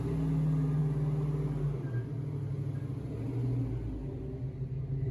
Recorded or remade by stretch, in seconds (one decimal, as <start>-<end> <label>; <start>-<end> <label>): 0.0-5.1 recorded